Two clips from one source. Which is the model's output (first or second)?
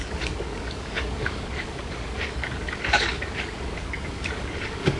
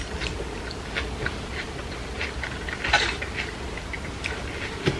first